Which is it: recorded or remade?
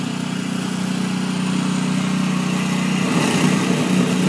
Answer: recorded